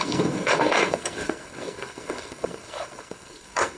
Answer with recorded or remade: remade